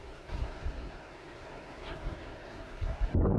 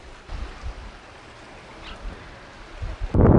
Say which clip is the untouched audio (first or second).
second